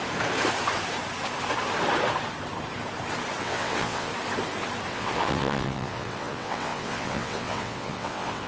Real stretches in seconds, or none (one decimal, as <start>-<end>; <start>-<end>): 0.0-3.4; 4.1-4.9